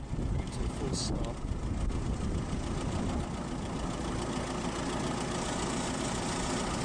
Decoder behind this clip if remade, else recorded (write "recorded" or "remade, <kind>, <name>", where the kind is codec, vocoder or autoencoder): recorded